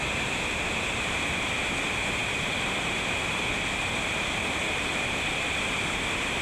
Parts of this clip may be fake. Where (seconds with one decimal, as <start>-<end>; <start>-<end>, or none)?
none